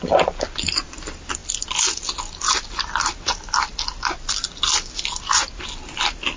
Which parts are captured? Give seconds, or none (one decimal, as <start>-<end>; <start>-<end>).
0.0-6.4